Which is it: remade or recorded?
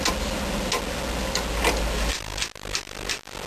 recorded